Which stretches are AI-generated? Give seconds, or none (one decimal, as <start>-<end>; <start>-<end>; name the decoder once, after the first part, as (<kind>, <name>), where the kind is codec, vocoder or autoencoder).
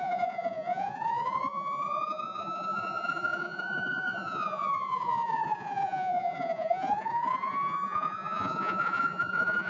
0.0-9.7 (vocoder, Vocos)